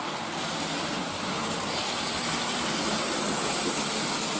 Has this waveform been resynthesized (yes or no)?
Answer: no